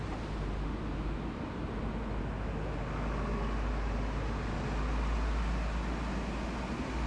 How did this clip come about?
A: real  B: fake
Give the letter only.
A